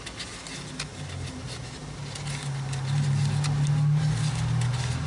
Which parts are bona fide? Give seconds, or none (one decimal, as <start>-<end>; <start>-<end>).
0.0-5.1